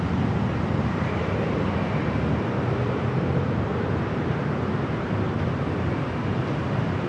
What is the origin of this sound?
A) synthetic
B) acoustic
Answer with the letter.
A